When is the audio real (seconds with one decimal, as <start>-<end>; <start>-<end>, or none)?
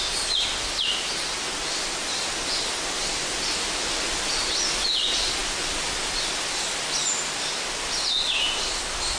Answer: 0.0-9.2